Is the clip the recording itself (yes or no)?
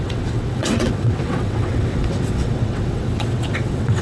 no